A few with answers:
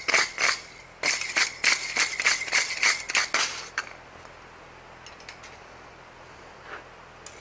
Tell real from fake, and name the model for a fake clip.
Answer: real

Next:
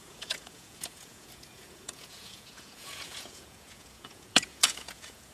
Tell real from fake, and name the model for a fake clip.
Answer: fake, vocoder, Vocos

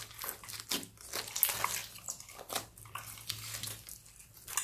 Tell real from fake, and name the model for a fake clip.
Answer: real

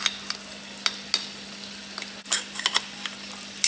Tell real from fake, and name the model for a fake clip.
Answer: real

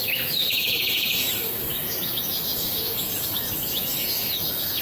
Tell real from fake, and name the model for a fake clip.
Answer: fake, autoencoder, DAC-VAE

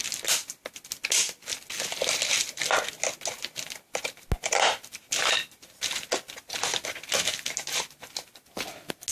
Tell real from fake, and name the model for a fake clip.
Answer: real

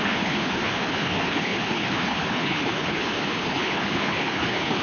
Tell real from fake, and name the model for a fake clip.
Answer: fake, codec, HILCodec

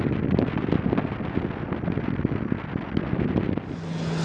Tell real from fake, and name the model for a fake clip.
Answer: real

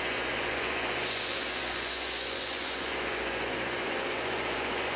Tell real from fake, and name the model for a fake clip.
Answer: fake, vocoder, Vocos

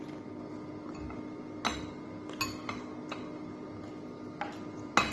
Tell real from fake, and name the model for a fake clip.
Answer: real